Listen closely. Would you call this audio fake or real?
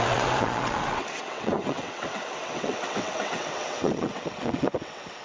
fake